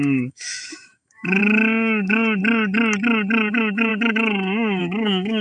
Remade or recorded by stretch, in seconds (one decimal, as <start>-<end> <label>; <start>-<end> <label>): 0.0-2.4 remade; 2.4-3.5 recorded; 3.5-5.4 remade